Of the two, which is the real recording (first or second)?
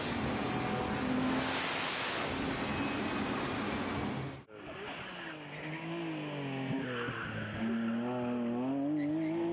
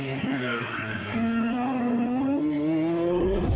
first